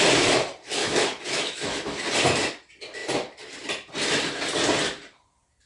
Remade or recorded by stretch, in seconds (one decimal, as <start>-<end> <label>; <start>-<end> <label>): 0.0-0.8 recorded; 0.8-2.0 remade; 2.0-5.7 recorded